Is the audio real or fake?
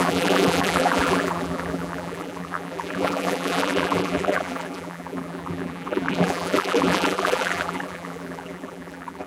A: fake